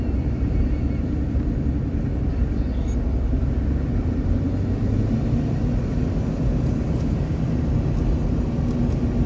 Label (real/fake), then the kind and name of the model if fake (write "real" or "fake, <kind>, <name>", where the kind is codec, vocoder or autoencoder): real